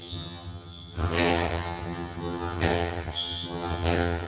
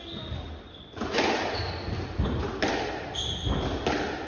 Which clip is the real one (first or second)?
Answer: second